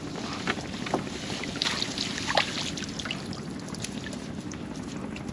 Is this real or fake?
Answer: real